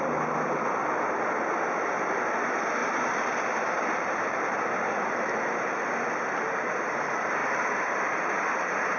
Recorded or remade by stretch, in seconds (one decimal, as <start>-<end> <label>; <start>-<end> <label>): 0.0-2.8 recorded; 2.8-5.0 remade; 5.0-9.0 recorded